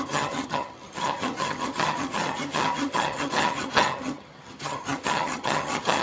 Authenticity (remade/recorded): remade